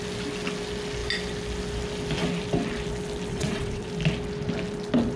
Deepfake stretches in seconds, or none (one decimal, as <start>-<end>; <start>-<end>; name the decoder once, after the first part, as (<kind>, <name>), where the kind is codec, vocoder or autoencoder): 3.3-3.9 (vocoder, WaveNeXt)